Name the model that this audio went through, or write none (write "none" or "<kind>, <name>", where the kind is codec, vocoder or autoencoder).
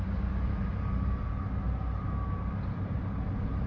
none